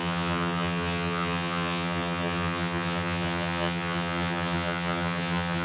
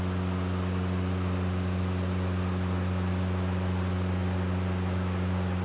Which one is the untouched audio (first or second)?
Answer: second